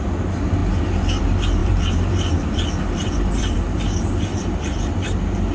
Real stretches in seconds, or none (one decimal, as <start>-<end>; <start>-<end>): 0.0-1.6; 4.9-5.5